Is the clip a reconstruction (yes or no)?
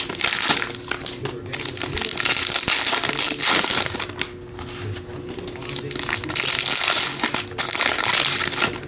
no